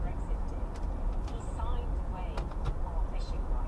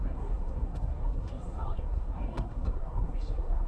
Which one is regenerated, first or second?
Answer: second